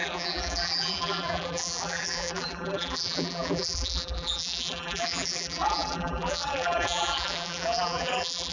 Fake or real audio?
fake